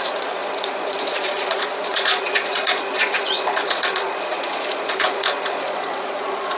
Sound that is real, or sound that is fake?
fake